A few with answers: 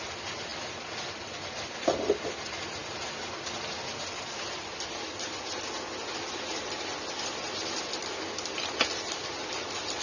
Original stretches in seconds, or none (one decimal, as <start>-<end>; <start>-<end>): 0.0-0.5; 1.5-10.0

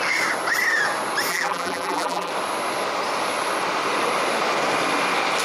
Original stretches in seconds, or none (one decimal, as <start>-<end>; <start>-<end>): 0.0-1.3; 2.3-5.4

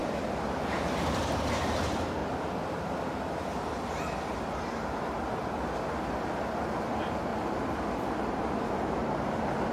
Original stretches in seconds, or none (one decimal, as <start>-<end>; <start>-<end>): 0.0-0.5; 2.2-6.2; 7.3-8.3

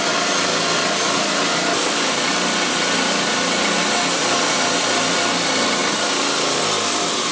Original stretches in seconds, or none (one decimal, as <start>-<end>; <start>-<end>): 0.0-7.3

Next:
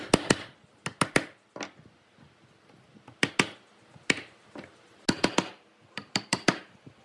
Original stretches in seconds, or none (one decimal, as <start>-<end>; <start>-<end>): 0.0-6.0

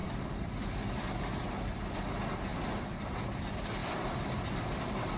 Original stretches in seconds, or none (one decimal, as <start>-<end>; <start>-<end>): 1.1-3.8